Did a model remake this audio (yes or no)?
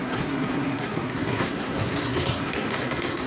yes